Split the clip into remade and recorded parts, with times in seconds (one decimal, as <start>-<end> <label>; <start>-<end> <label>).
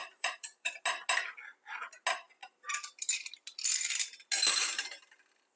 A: 0.0-0.7 remade; 0.7-5.6 recorded